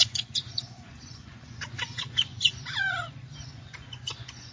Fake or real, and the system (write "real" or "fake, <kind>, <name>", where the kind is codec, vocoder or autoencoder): fake, vocoder, Vocos